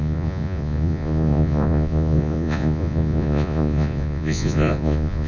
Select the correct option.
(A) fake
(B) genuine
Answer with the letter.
A